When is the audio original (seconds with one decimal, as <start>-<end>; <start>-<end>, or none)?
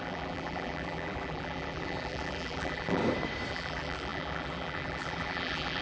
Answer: 3.0-3.5